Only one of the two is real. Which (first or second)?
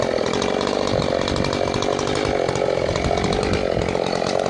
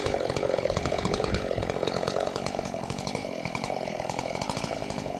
first